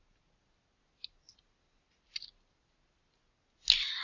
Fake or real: real